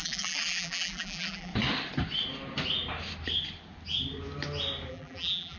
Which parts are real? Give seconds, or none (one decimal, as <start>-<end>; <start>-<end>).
1.5-4.9

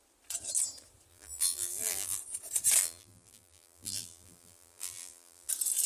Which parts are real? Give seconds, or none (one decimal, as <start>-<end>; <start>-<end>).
0.0-1.1; 2.2-2.8; 5.5-5.9

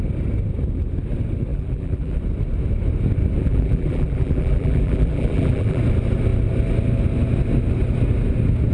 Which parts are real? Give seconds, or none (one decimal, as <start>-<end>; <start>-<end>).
0.0-1.5; 2.2-3.4; 5.8-8.7

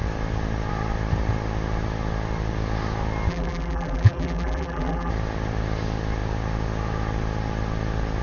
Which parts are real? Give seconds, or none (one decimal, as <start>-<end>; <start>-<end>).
0.0-3.3; 5.1-8.2